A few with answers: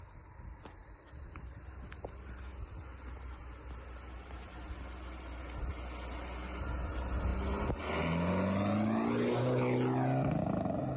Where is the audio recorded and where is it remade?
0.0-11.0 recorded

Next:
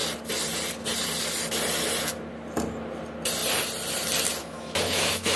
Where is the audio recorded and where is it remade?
0.0-4.4 recorded; 4.4-5.4 remade

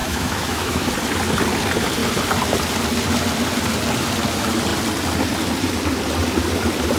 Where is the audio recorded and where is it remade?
0.0-0.9 remade; 0.9-7.0 recorded